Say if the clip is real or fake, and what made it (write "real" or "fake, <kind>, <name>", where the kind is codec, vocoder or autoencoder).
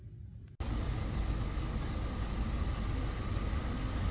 real